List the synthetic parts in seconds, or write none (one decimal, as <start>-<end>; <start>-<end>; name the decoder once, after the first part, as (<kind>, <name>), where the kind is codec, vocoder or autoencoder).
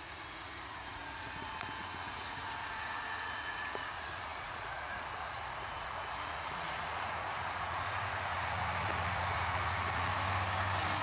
0.0-10.1 (vocoder, Vocos)